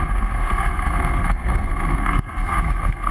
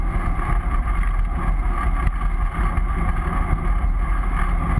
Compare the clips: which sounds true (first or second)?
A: second